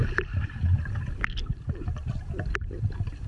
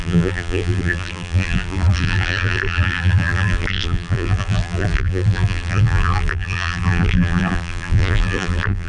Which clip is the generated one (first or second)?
second